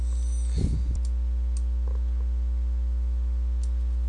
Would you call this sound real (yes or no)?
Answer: yes